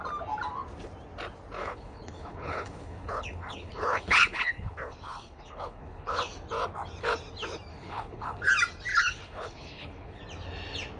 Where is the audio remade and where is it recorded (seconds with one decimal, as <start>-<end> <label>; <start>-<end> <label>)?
0.0-1.6 recorded; 1.6-6.3 remade; 6.3-7.7 recorded; 7.7-8.5 remade; 8.5-8.9 recorded; 8.9-10.2 remade; 10.2-11.0 recorded